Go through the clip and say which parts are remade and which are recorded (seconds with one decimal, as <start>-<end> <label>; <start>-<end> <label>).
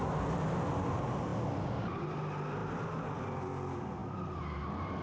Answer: 0.0-5.0 recorded